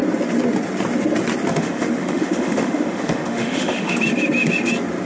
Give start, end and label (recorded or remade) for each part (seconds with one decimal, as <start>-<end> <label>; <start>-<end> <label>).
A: 0.0-1.5 recorded; 1.5-4.0 remade; 4.0-5.1 recorded